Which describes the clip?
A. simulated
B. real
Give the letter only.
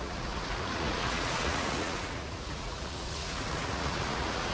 A